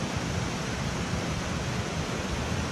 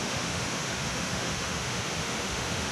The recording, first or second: first